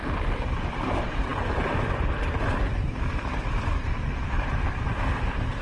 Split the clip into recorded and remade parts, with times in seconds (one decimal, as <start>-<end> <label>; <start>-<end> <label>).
0.0-5.6 recorded